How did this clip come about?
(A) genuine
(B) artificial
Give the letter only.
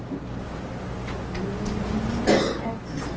A